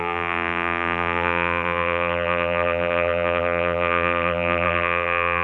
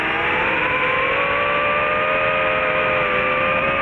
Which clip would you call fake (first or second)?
first